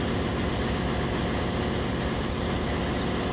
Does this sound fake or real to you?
real